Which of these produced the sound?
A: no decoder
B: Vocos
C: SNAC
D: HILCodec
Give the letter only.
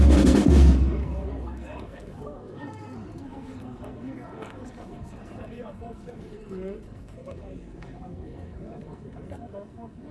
C